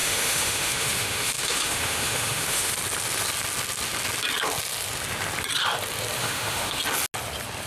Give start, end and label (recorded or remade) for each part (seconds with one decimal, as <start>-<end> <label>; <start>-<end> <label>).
0.0-2.7 remade; 2.7-6.2 recorded; 6.2-6.8 remade; 6.8-7.7 recorded